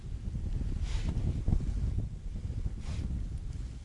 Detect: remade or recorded recorded